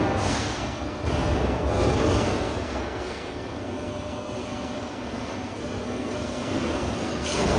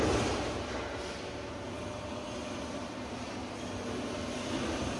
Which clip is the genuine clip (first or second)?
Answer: second